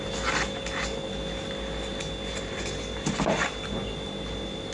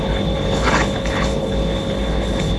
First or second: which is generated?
second